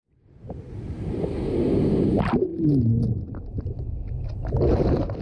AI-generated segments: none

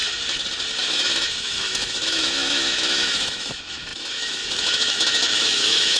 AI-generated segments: 0.8-6.0 (autoencoder, DAC-VAE)

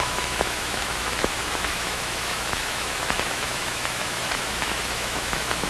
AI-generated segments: 0.0-5.7 (autoencoder, DAC-VAE)

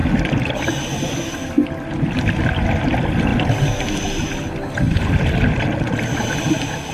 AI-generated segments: none